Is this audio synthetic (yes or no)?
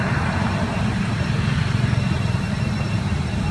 yes